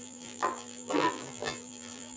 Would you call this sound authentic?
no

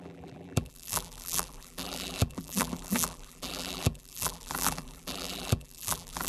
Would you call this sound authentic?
no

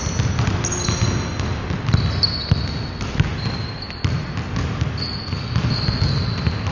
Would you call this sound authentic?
yes